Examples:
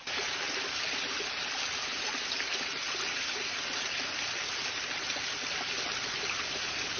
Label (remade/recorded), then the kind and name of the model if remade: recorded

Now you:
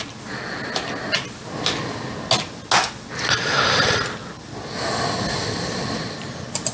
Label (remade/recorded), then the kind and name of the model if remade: recorded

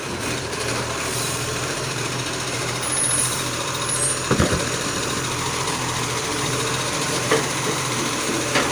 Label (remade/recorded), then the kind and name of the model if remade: remade, vocoder, BigVGAN v2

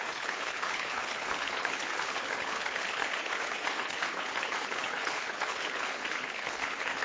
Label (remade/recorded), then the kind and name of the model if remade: remade, codec, HILCodec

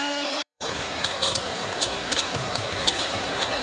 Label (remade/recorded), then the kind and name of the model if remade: remade, codec, SNAC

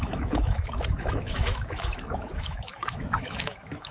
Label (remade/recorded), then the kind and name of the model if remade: remade, autoencoder, DAC-VAE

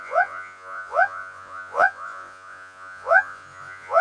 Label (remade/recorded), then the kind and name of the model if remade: remade, vocoder, Vocos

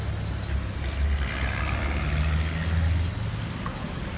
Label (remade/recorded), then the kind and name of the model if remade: recorded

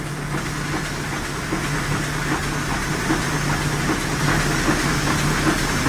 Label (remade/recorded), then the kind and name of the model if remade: recorded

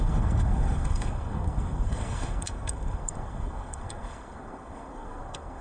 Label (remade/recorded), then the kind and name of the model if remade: remade, codec, SNAC